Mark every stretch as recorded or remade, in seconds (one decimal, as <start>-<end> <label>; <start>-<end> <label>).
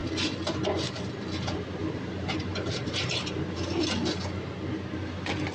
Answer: 0.0-0.6 remade; 0.6-1.8 recorded; 1.8-3.8 remade; 3.8-5.5 recorded